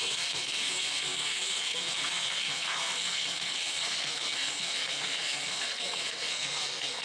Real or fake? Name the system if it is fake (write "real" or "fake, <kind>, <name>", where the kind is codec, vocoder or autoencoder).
fake, codec, SNAC